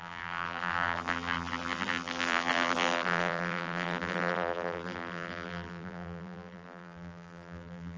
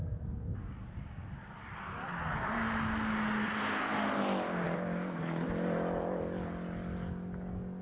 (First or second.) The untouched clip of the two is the second